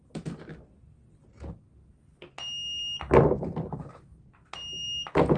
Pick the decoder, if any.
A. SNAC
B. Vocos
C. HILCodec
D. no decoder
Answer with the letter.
D